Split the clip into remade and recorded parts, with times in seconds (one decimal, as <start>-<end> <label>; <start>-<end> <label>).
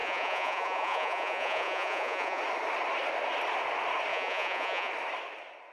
0.0-2.4 remade; 2.4-4.1 recorded; 4.1-4.9 remade; 4.9-5.7 recorded